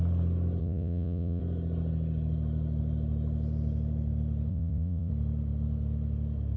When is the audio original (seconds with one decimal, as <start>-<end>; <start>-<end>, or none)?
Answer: 0.0-0.6; 1.4-4.5; 5.1-6.6

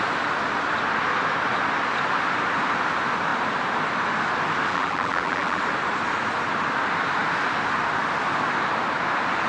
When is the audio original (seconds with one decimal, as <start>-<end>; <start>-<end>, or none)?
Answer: 0.0-4.7; 5.6-9.5

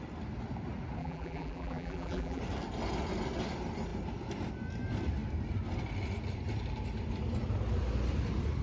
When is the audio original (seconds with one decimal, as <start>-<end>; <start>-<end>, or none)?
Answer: 0.0-1.0; 2.4-8.6

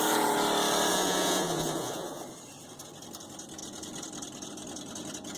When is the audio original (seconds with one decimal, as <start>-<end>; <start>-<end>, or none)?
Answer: 0.0-0.9; 2.2-5.4